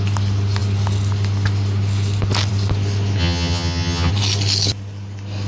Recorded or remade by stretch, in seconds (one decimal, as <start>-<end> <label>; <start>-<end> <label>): 0.0-3.2 recorded; 3.2-4.1 remade; 4.1-5.5 recorded